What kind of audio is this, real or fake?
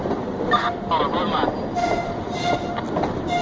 real